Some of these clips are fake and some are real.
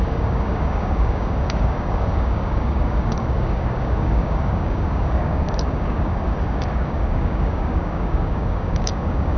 fake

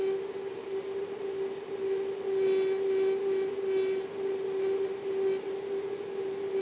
real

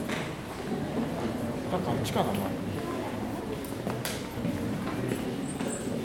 real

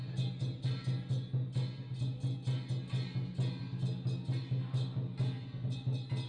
real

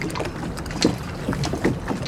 real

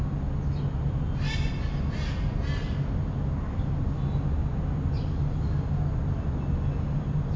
real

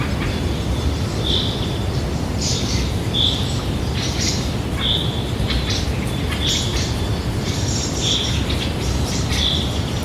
fake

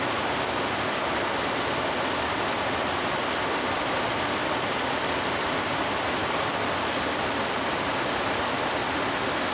real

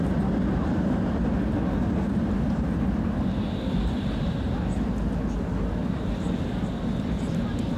real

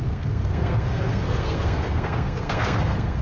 fake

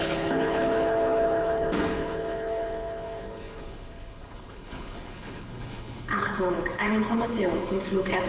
fake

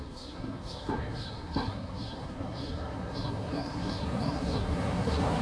fake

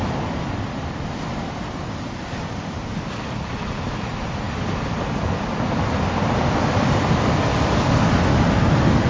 real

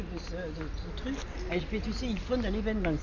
real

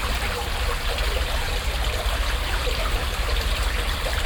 fake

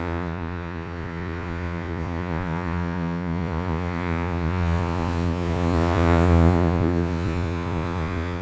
fake